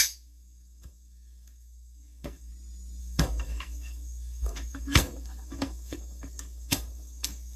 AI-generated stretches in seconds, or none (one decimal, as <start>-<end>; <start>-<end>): 0.0-2.5; 3.0-7.6